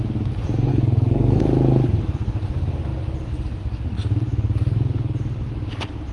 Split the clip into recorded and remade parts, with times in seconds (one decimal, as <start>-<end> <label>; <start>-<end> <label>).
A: 0.0-0.7 recorded; 0.7-1.4 remade; 1.4-6.1 recorded